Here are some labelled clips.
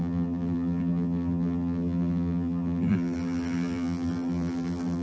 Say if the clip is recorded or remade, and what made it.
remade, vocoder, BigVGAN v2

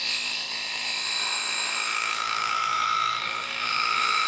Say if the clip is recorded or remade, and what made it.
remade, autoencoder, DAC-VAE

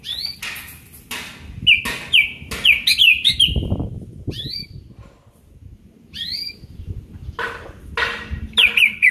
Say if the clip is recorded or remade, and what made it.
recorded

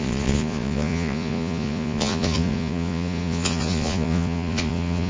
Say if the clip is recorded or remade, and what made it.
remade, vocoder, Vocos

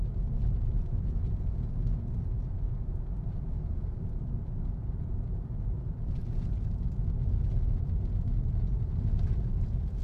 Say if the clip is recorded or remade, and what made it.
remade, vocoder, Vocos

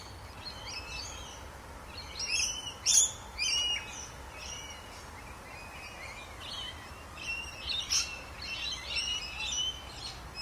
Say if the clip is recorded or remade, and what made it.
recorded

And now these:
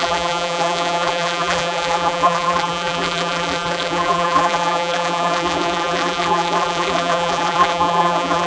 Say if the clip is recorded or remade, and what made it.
remade, vocoder, BigVGAN v2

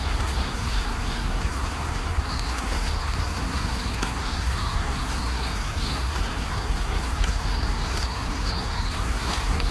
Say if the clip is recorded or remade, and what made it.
remade, codec, SNAC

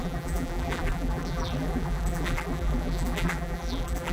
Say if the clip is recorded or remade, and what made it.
remade, vocoder, BigVGAN v2